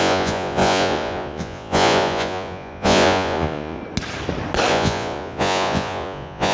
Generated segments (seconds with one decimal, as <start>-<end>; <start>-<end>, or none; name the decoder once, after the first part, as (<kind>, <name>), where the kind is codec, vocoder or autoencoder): 0.0-3.8 (vocoder, Vocos); 4.7-6.5